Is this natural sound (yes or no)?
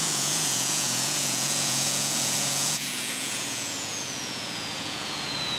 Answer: no